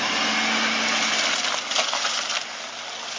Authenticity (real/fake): real